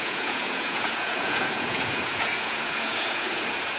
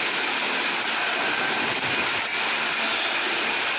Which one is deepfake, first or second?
first